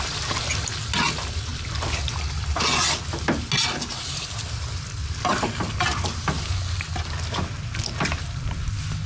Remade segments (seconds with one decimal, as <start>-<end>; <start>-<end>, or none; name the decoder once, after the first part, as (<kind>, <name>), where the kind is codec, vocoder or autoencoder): none